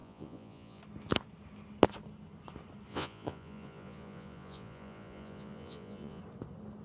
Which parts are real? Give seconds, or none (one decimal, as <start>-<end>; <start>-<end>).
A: 0.8-2.9; 6.2-6.8